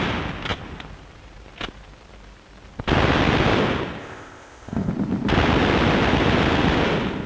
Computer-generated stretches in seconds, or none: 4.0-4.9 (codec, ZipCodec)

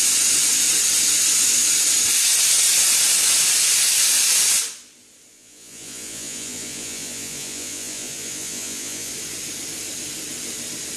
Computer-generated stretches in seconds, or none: 5.3-9.1 (vocoder, Vocos)

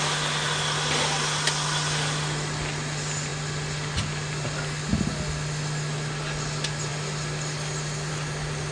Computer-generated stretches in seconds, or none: none

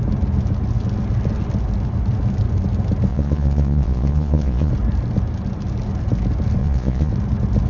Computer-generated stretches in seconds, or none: 3.1-4.7 (vocoder, Vocos); 6.6-7.1

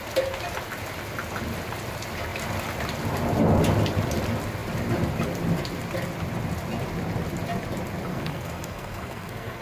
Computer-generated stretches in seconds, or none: 8.1-9.6 (codec, SNAC)